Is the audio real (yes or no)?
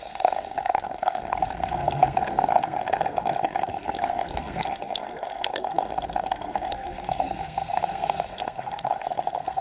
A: no